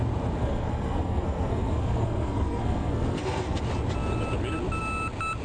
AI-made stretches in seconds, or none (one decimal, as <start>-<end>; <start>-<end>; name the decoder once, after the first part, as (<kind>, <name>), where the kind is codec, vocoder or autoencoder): 0.4-3.6 (codec, SNAC)